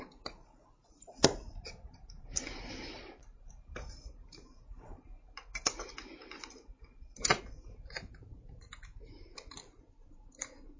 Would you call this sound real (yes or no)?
no